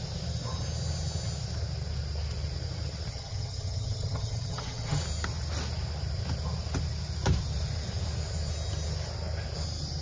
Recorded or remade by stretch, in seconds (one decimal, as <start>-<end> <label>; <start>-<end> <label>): 0.0-3.1 recorded; 3.1-5.0 remade; 5.0-10.0 recorded